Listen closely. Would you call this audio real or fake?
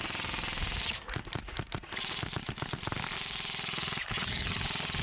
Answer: real